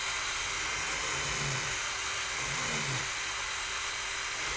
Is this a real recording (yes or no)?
yes